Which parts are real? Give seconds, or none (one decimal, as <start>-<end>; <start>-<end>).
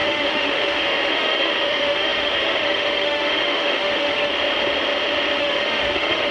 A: 4.3-5.4